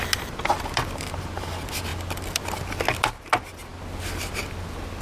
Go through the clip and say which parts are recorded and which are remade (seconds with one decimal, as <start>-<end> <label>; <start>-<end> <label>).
0.0-5.0 recorded